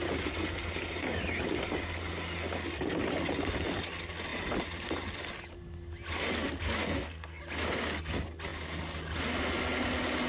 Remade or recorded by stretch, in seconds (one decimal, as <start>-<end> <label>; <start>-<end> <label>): 0.0-6.8 recorded; 6.8-7.4 remade; 7.4-10.3 recorded